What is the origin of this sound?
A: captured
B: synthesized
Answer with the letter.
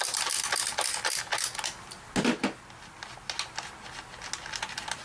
A